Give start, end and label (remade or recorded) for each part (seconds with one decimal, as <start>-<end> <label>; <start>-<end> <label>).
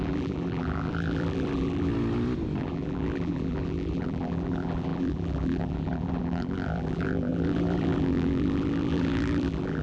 0.0-1.9 remade; 1.9-2.6 recorded; 2.6-9.8 remade